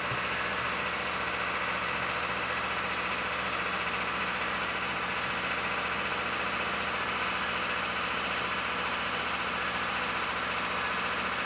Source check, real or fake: real